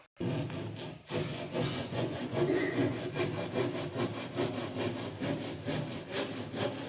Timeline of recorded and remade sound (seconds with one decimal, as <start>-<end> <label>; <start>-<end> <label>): 0.0-1.3 recorded; 1.3-3.1 remade; 3.1-6.9 recorded